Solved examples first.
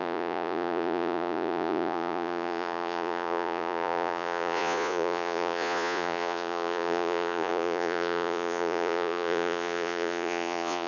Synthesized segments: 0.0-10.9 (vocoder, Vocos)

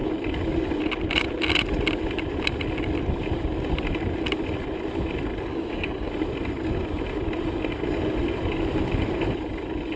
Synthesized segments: 5.5-6.1 (codec, DAC)

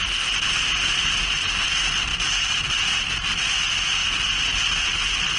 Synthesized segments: none

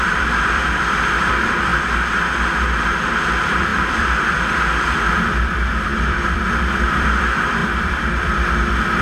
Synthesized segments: 0.0-1.7 (vocoder, BigVGAN v2); 3.0-9.0